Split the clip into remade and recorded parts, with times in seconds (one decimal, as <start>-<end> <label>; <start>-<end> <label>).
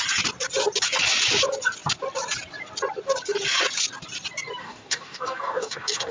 0.0-4.6 recorded; 4.6-6.1 remade